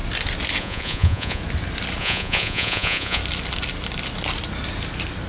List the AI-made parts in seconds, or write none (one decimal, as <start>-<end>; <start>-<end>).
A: 0.6-1.4; 2.0-3.2